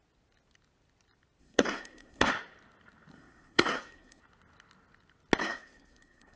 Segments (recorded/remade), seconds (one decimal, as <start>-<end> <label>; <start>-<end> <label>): 0.0-1.4 recorded; 1.4-2.3 remade; 2.3-3.1 recorded; 3.1-4.2 remade; 4.2-5.4 recorded; 5.4-6.4 remade